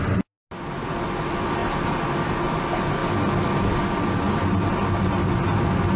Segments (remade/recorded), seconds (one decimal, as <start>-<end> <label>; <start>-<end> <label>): 0.0-6.0 recorded